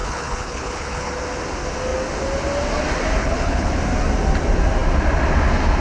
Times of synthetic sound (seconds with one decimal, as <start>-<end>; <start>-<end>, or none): 0.0-1.2; 3.2-3.7

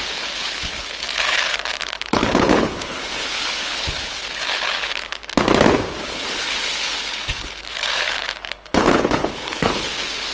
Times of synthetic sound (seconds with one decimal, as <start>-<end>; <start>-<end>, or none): 0.0-5.2; 6.0-10.3

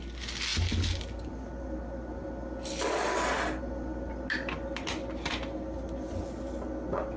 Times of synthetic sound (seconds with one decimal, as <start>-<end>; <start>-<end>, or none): none